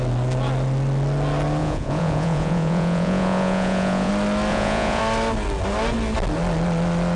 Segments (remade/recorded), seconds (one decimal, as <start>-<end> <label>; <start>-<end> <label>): 0.0-1.6 recorded; 1.6-4.1 remade; 4.1-4.5 recorded; 4.5-5.0 remade; 5.0-7.2 recorded

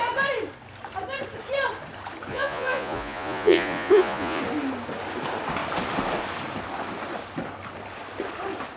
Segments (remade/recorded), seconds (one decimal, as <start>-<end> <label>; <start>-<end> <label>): 0.0-2.3 recorded; 2.3-4.4 remade; 4.4-8.8 recorded